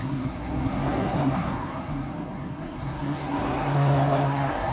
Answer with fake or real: fake